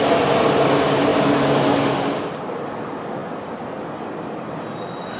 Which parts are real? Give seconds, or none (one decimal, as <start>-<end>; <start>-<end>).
0.0-5.2